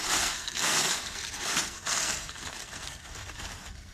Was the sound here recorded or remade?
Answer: remade